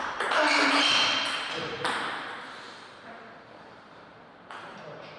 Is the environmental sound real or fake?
fake